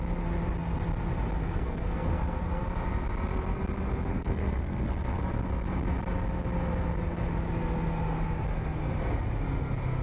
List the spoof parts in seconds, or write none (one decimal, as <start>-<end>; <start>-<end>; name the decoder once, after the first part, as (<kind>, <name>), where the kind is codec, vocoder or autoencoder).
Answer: 1.4-2.6 (codec, SNAC); 4.1-5.2